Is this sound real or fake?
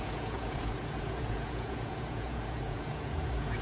fake